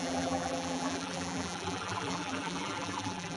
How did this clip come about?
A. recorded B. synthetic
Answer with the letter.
B